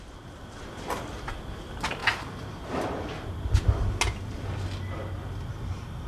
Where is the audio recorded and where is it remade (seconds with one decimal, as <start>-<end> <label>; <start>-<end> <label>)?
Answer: 0.0-6.1 recorded

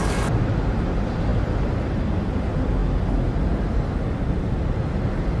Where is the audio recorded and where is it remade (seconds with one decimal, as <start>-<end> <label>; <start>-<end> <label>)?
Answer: 0.0-5.4 recorded

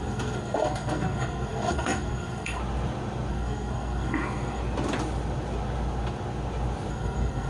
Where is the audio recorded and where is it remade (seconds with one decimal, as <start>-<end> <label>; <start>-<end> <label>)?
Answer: 0.0-2.6 remade; 2.6-3.3 recorded; 3.3-4.6 remade; 4.6-6.9 recorded; 6.9-7.5 remade

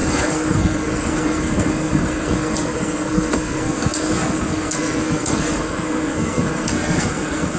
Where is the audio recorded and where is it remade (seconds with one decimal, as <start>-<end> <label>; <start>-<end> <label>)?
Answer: 0.0-7.6 remade

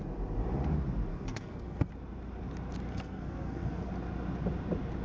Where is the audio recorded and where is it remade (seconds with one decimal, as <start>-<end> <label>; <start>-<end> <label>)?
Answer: 0.0-1.1 recorded; 1.1-1.9 remade; 1.9-2.9 recorded; 2.9-3.9 remade; 3.9-5.0 recorded